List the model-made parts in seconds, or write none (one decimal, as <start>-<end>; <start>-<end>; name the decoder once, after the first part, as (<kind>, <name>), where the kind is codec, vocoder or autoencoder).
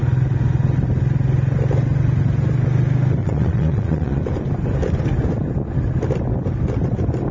3.2-4.2 (vocoder, Vocos)